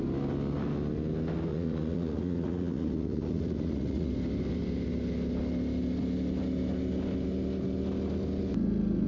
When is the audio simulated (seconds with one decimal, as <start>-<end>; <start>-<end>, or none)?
1.5-4.1